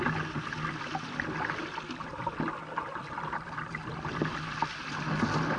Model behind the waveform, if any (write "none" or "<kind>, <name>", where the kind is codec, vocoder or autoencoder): none